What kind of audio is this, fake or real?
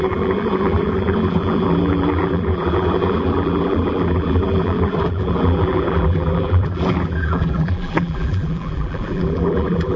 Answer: fake